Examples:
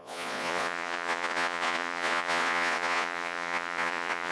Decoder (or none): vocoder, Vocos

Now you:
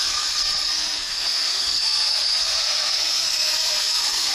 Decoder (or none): codec, SNAC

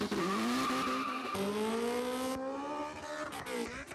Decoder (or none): none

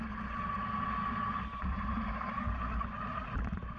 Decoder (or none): none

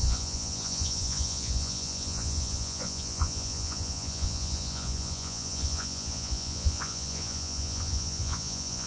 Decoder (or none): vocoder, Vocos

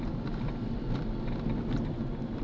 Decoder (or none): none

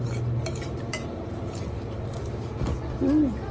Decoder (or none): none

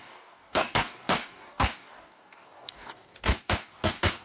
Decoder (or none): codec, DAC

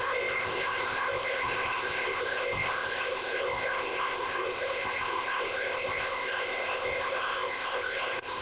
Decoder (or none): codec, ZipCodec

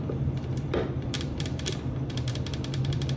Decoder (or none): vocoder, BigVGAN v2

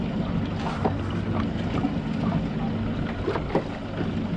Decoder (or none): none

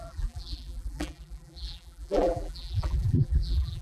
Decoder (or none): vocoder, BigVGAN v2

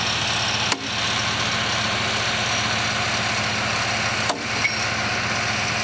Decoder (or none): none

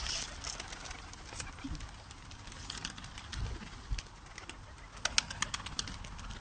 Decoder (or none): none